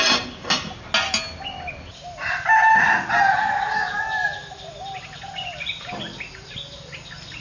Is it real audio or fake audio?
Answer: real